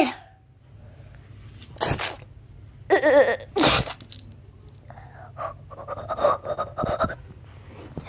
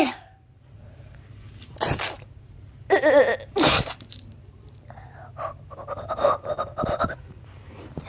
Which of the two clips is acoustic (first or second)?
first